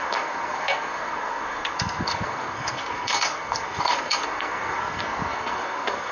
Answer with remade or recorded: remade